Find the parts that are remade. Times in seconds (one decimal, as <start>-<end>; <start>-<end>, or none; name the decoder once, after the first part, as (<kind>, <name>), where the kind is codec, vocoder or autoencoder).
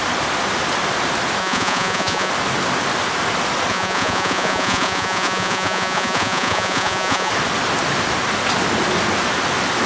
1.4-2.3 (vocoder, Vocos); 3.7-7.3